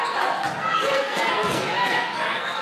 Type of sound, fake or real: fake